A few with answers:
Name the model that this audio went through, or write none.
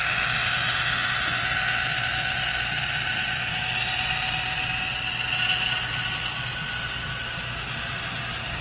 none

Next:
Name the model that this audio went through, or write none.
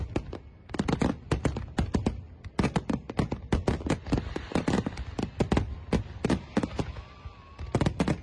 none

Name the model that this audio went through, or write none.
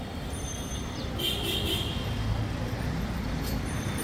vocoder, BigVGAN v2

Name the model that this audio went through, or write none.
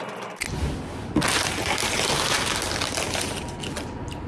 none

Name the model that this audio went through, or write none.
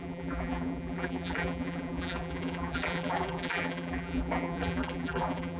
vocoder, BigVGAN v2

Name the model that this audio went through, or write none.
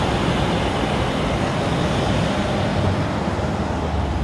none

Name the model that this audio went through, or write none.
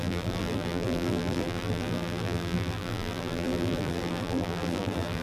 vocoder, BigVGAN v2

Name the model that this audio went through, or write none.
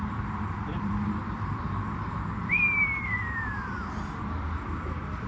vocoder, BigVGAN v2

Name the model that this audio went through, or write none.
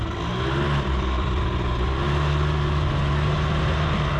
none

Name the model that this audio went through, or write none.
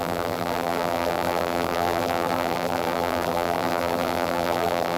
vocoder, BigVGAN v2